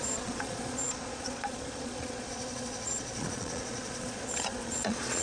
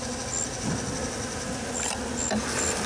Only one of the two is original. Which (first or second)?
second